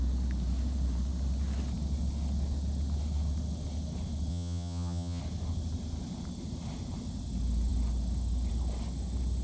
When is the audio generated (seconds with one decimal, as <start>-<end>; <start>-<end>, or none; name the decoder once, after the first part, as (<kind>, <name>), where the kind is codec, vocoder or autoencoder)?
4.3-5.2 (vocoder, HiFi-GAN)